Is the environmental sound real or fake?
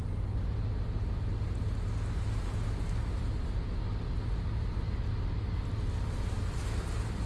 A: real